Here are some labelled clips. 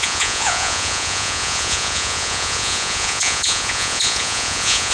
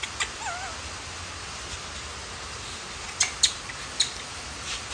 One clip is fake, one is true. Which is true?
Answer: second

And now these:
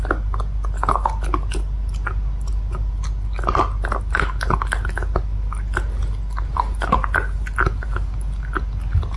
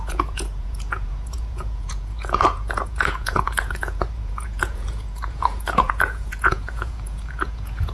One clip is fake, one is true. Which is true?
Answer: first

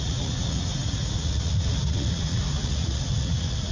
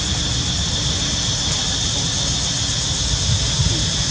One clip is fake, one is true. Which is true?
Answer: second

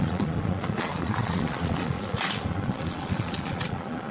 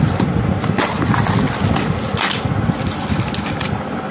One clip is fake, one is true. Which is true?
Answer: second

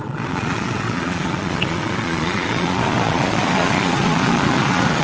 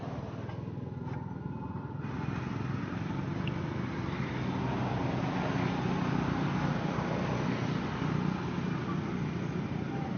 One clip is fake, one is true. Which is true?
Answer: second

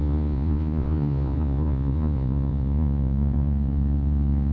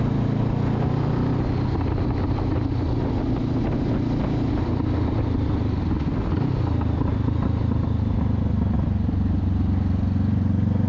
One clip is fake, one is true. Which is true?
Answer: second